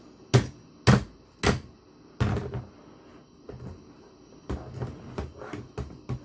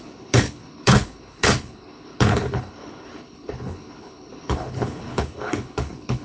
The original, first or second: first